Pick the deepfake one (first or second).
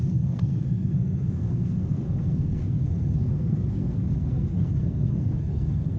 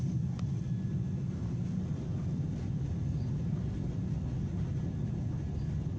first